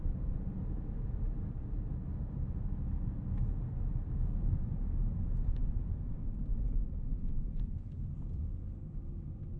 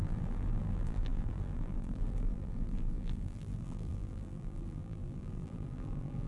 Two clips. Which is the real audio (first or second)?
first